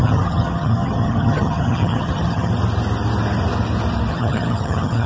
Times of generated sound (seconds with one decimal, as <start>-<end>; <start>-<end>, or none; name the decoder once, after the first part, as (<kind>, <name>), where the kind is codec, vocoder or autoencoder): 0.0-2.5 (vocoder, HiFi-GAN); 4.1-5.1